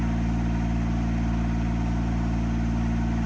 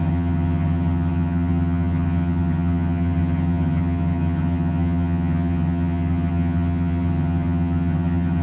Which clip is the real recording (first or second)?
first